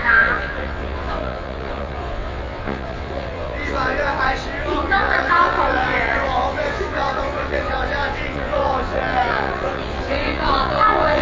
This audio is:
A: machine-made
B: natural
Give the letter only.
A